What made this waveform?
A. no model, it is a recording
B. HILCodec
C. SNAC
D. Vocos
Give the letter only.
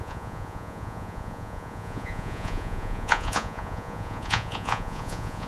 D